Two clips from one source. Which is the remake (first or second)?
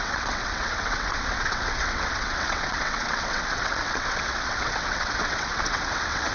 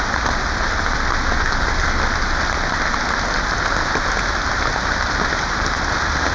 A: first